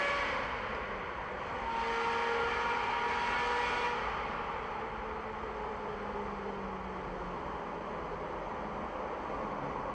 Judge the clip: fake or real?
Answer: real